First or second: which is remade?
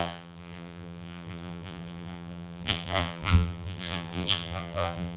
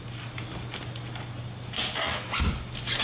first